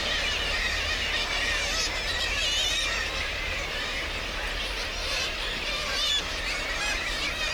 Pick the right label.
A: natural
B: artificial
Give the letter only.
B